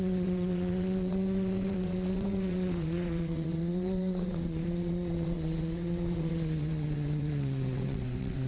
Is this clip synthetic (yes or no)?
yes